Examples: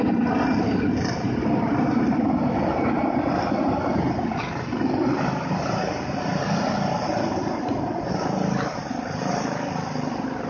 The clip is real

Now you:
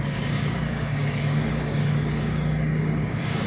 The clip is fake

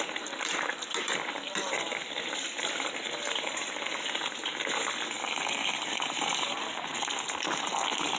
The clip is real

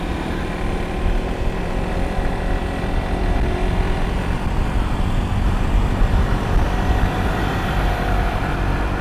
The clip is fake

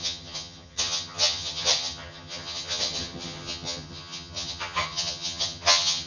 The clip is fake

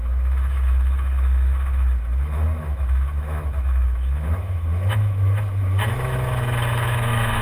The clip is fake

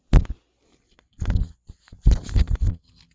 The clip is real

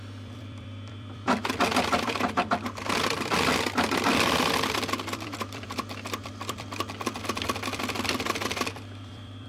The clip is fake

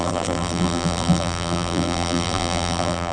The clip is fake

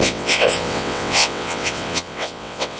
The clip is fake